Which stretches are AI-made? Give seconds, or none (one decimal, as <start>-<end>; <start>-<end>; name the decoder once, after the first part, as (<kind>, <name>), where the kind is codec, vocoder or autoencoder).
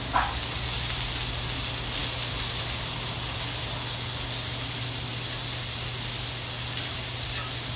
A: none